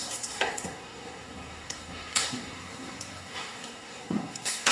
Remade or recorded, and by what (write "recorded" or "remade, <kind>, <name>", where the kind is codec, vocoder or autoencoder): remade, codec, SNAC